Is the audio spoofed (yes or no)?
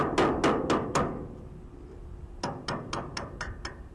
no